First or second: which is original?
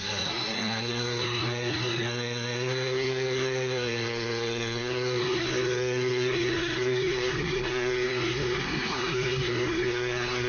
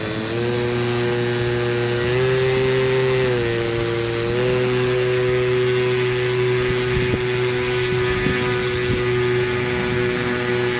second